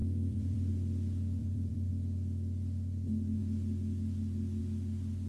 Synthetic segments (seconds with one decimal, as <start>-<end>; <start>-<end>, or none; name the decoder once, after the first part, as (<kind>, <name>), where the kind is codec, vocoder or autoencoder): 0.0-0.7 (vocoder, BigVGAN v2); 1.4-1.9

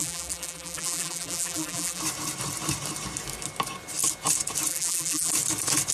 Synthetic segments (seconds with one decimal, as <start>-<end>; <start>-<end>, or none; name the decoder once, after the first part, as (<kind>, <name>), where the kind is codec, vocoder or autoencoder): 0.0-2.0 (vocoder, BigVGAN v2); 4.7-5.3

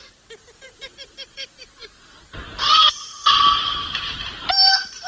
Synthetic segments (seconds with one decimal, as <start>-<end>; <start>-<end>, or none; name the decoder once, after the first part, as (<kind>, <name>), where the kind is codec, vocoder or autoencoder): none

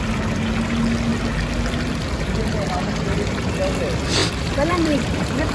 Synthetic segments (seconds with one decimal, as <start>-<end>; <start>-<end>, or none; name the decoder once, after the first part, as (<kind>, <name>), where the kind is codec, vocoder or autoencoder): 4.2-5.5 (vocoder, BigVGAN v2)

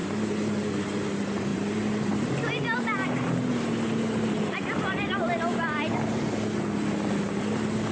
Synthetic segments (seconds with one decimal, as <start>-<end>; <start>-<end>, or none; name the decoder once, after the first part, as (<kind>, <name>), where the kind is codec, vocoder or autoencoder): 0.0-0.7 (vocoder, BigVGAN v2); 1.5-2.3